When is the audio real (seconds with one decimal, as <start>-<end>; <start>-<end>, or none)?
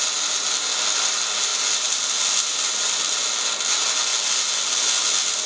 0.0-5.5